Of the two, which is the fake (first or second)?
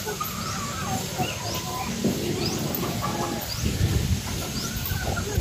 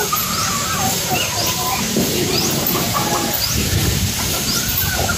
second